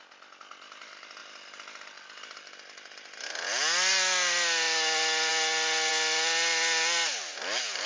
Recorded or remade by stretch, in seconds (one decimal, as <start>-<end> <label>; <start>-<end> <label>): 0.0-7.9 recorded